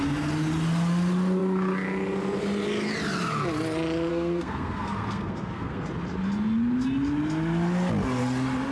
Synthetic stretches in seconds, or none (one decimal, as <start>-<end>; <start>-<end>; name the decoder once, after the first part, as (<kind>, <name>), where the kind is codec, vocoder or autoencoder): 4.1-5.9 (codec, SNAC)